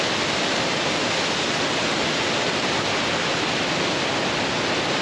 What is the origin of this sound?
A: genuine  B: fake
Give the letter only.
A